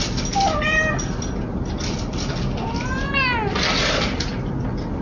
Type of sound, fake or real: real